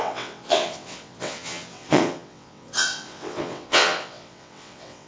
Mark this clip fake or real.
fake